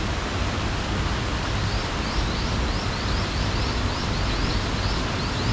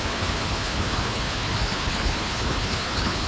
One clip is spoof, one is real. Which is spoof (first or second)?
second